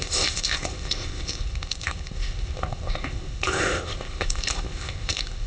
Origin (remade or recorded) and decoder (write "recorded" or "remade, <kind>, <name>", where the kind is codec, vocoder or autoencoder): remade, codec, ZipCodec